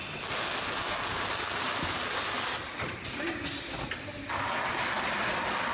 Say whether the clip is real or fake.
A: real